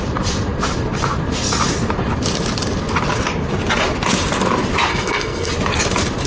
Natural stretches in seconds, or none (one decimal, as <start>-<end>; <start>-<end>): 0.0-4.9; 5.5-6.3